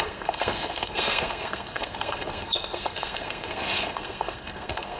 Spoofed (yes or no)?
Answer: yes